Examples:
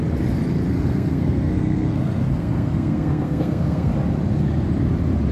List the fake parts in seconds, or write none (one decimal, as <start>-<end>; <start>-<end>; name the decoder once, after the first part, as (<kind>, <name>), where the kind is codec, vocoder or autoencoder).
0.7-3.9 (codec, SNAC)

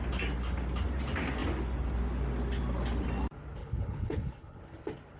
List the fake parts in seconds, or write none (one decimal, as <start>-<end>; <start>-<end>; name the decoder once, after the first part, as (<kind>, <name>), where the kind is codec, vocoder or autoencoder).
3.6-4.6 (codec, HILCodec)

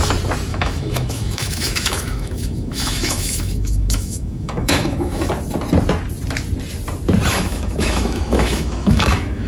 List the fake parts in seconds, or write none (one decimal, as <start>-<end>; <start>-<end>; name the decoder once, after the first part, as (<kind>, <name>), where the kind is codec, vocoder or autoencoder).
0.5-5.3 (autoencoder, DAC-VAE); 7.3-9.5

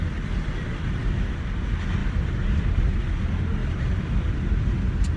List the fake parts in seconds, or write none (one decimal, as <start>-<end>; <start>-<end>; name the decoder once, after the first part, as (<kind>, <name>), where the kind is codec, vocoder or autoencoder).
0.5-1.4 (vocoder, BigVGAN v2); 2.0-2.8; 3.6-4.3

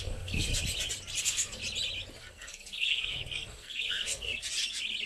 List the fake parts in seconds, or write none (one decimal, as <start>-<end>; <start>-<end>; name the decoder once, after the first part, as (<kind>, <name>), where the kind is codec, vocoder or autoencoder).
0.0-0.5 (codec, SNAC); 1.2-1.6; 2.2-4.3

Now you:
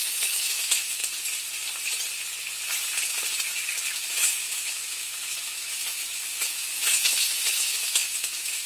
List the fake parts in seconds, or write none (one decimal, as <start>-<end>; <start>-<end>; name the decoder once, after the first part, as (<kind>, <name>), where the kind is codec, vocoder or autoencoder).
0.0-1.0 (autoencoder, DAC-VAE); 3.9-8.7

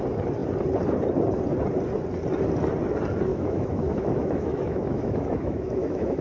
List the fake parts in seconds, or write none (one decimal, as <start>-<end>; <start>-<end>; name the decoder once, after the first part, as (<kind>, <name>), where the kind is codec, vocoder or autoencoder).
3.3-6.2 (autoencoder, DAC-VAE)